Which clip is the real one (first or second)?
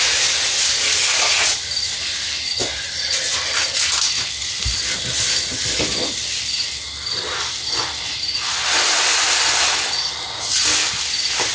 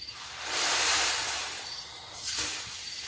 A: first